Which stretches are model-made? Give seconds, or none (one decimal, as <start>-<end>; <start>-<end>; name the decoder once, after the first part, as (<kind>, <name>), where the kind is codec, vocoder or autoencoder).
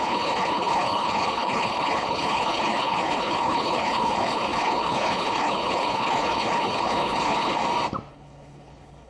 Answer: 0.0-7.6 (codec, HILCodec); 8.1-9.1